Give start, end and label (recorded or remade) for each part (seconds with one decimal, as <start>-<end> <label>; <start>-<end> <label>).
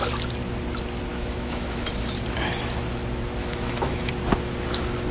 0.0-1.1 recorded; 1.1-1.9 remade; 1.9-3.4 recorded; 3.4-4.1 remade; 4.1-5.1 recorded